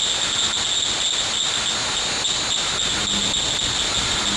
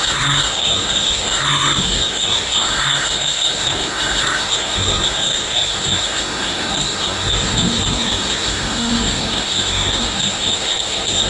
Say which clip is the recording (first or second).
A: first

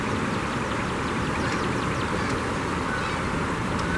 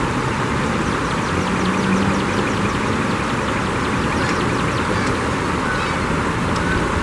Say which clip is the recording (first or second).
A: second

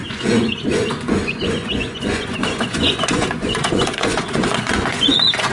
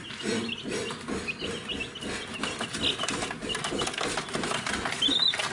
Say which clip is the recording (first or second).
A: second